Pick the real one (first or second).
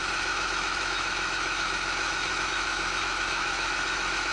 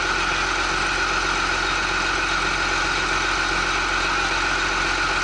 second